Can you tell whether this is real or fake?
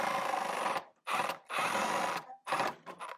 real